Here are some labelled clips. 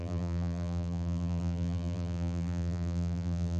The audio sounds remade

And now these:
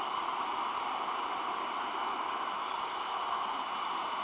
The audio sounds remade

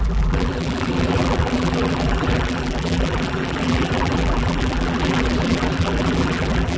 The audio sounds remade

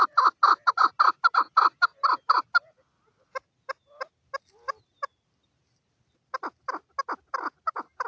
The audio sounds recorded